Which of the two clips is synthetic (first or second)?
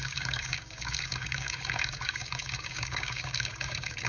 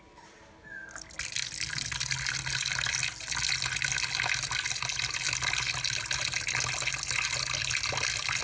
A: first